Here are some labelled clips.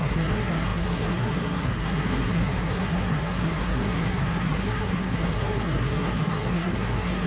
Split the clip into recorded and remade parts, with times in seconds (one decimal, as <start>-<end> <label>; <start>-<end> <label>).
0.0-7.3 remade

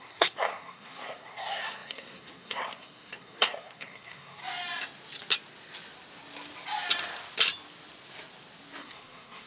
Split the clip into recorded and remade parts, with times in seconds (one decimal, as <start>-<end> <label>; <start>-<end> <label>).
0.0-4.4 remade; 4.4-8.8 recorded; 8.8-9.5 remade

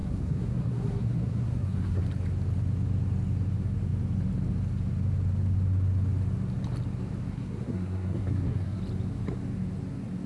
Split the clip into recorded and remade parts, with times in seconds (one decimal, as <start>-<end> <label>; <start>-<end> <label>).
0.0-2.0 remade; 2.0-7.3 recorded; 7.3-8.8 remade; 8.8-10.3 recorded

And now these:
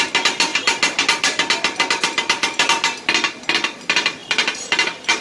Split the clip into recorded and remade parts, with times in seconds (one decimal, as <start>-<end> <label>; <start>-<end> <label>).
0.0-5.2 recorded